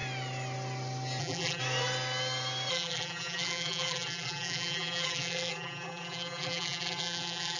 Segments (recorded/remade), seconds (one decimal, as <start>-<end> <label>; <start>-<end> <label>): 0.0-1.2 recorded; 1.2-1.6 remade; 1.6-2.7 recorded; 2.7-7.6 remade